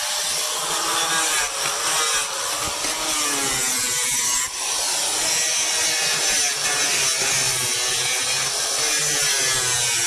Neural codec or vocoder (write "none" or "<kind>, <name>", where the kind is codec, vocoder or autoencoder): none